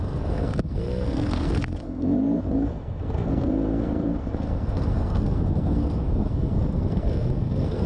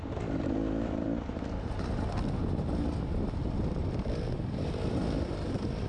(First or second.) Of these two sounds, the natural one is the second